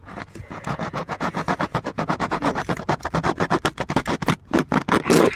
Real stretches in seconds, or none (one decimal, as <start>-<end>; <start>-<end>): 2.5-5.4